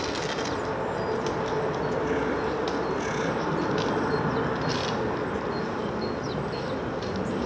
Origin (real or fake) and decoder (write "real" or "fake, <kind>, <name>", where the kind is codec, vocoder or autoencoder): real